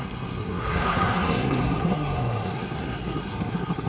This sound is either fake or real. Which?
fake